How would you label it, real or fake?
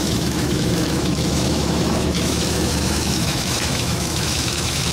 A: fake